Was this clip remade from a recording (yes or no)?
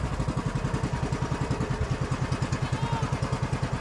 no